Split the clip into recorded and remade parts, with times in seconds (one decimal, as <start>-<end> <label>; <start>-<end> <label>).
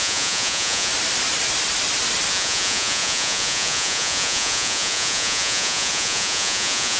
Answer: 0.0-0.9 remade; 0.9-2.3 recorded; 2.3-7.0 remade